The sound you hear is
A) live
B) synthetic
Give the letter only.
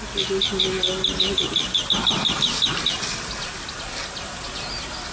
A